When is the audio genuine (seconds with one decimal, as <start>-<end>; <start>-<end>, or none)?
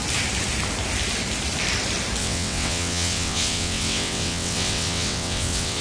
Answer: 0.0-2.2